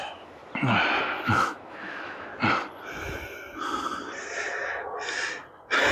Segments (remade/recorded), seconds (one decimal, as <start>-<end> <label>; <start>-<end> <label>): 0.0-0.4 remade; 0.4-1.0 recorded; 1.0-2.3 remade; 2.3-5.9 recorded